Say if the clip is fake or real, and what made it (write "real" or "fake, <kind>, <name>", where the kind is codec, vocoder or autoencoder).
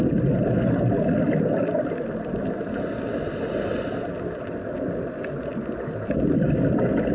real